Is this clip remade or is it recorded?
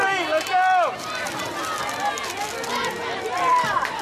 recorded